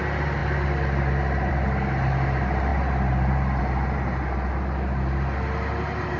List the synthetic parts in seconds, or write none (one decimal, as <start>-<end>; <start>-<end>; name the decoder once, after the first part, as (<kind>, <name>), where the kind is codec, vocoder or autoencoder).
none